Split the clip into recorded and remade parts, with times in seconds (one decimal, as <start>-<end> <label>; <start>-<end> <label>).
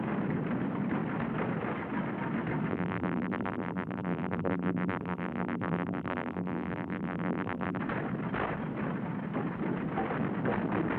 0.0-2.7 recorded; 2.7-7.8 remade; 7.8-11.0 recorded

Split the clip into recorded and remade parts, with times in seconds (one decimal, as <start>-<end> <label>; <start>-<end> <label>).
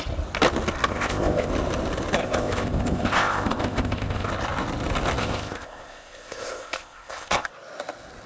0.0-0.9 recorded; 0.9-1.5 remade; 1.5-2.2 recorded; 2.2-4.3 remade; 4.3-5.2 recorded; 5.2-7.5 remade; 7.5-8.3 recorded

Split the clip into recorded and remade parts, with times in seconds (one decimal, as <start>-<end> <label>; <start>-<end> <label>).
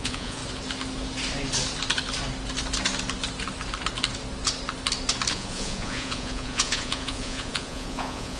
0.0-0.4 remade; 0.4-5.3 recorded; 5.3-8.4 remade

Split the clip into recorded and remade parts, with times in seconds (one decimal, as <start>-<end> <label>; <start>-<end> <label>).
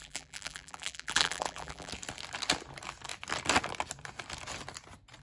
0.0-1.9 remade; 1.9-5.2 recorded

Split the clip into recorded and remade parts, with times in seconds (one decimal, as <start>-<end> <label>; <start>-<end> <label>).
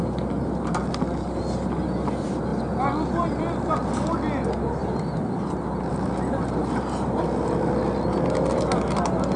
0.0-9.4 recorded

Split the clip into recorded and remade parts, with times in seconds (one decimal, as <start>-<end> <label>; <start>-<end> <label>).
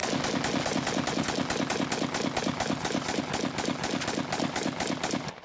0.0-5.4 recorded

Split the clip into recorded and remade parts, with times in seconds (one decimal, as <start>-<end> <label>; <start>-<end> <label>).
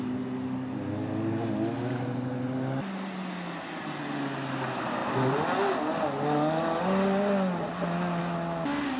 0.0-9.0 recorded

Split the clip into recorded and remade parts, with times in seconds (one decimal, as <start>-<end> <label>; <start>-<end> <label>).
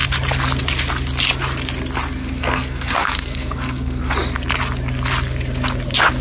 0.0-2.2 recorded; 2.2-4.1 remade; 4.1-6.2 recorded